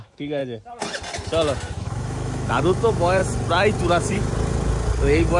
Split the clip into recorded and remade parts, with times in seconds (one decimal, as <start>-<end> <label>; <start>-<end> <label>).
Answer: 0.0-0.4 remade; 0.4-1.8 recorded; 1.8-3.2 remade; 3.2-3.8 recorded; 3.8-4.3 remade; 4.3-5.0 recorded; 5.0-5.4 remade